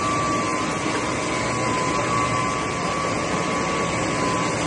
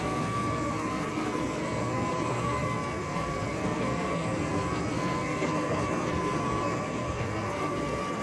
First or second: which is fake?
second